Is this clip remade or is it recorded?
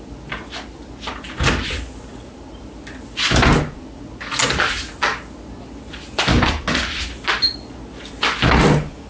recorded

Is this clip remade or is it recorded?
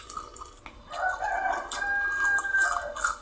recorded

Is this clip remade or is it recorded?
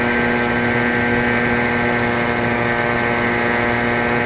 recorded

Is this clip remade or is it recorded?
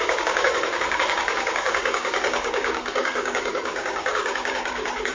remade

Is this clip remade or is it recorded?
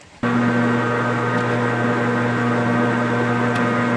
recorded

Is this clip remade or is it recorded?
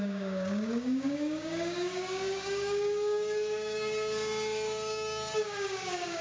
remade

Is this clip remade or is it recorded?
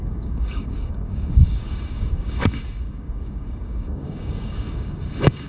remade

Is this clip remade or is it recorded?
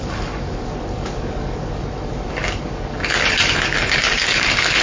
remade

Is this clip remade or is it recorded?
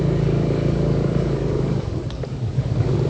remade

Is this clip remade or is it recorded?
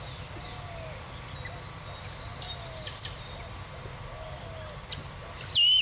recorded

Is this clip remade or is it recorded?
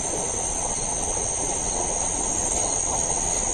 recorded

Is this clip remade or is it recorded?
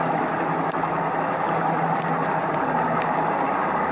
recorded